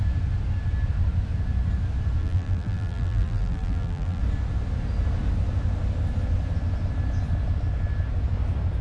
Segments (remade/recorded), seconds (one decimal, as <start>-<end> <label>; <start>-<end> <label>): 0.0-2.2 recorded; 2.2-4.2 remade; 4.2-8.8 recorded